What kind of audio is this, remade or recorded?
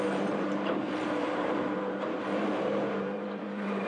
remade